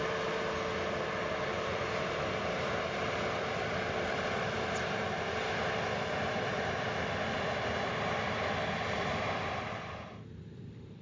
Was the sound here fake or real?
real